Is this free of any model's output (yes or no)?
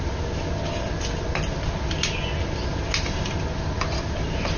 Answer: yes